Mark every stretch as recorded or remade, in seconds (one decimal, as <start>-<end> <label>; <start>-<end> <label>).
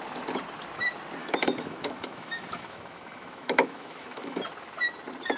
0.0-1.2 recorded; 1.2-4.4 remade; 4.4-5.4 recorded